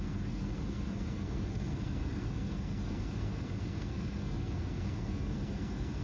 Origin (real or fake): fake